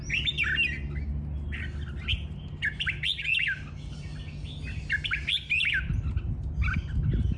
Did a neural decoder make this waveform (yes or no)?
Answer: no